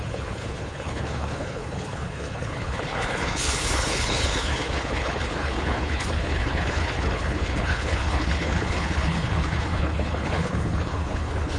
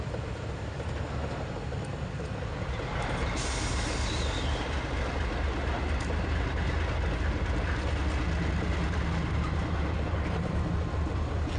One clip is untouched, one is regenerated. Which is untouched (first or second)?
second